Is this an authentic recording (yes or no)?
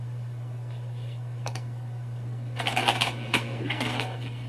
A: no